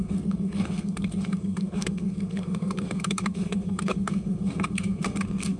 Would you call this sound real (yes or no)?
no